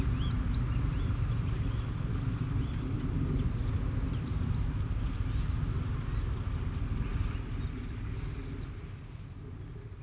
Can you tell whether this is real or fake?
real